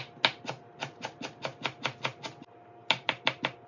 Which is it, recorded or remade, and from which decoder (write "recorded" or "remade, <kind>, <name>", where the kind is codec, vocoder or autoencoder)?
recorded